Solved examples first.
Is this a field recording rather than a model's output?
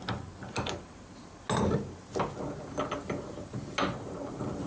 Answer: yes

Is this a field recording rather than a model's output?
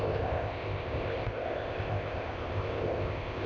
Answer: no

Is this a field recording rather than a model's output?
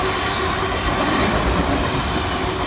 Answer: yes